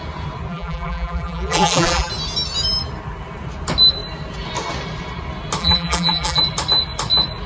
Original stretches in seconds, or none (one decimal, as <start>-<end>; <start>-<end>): 0.0-0.5; 2.1-5.6; 6.4-7.5